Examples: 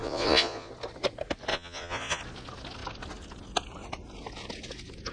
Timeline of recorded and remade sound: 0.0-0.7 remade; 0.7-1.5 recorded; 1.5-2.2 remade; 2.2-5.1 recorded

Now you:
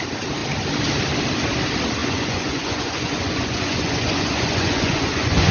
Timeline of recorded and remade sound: 0.0-2.0 recorded; 2.0-5.5 remade

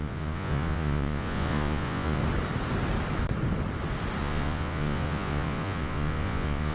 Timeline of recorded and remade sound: 0.0-2.2 remade; 2.2-4.2 recorded; 4.2-6.7 remade

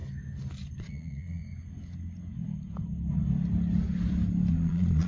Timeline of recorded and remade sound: 0.0-0.8 recorded; 0.8-1.4 remade; 1.4-4.5 recorded; 4.5-5.1 remade

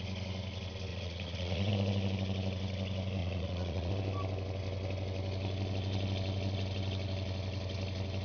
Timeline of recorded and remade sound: 0.0-0.9 recorded; 0.9-1.7 remade; 1.7-3.2 recorded; 3.2-3.9 remade; 3.9-8.2 recorded

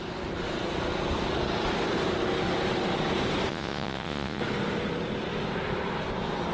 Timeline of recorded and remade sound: 0.0-3.5 recorded; 3.5-4.4 remade; 4.4-6.5 recorded

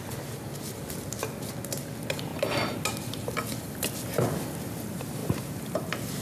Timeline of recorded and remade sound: 0.0-6.2 recorded